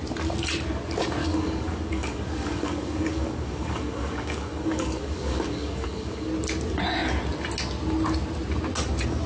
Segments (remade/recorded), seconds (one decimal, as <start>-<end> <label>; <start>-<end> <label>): 0.0-1.2 recorded; 1.2-6.3 remade; 6.3-9.3 recorded